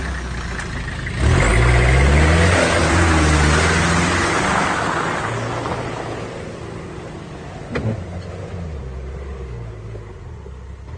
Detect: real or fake real